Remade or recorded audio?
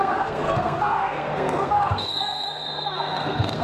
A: remade